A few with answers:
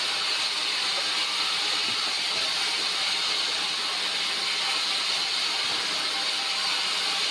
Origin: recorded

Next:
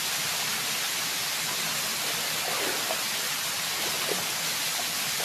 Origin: recorded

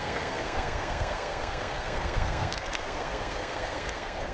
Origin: remade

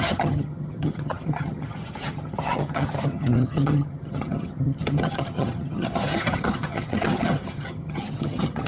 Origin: remade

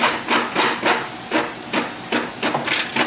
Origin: recorded